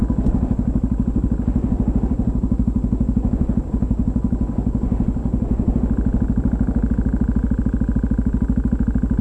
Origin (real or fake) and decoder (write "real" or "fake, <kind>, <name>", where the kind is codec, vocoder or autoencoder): real